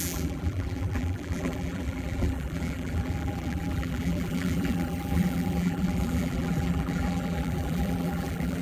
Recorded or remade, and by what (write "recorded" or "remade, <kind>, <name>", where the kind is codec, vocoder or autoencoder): remade, vocoder, BigVGAN v2